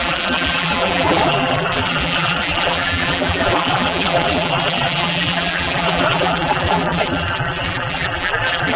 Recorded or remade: remade